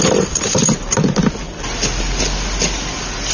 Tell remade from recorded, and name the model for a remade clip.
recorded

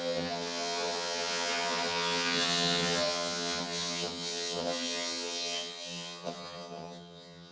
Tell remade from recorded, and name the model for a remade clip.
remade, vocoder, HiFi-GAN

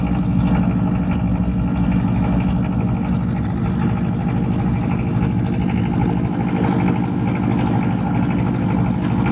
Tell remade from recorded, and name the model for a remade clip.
recorded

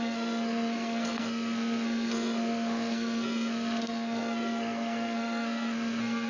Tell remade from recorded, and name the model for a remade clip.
remade, codec, SNAC